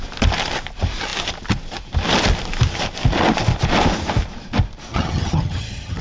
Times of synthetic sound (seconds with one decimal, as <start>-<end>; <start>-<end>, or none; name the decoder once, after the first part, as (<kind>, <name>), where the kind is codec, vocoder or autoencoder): 4.9-6.0 (vocoder, HiFi-GAN)